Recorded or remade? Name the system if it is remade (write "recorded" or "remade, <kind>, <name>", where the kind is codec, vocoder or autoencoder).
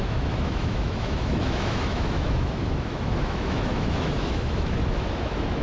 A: remade, autoencoder, DAC-VAE